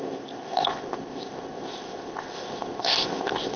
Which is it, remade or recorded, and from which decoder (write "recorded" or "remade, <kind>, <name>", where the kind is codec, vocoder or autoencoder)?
remade, codec, ZipCodec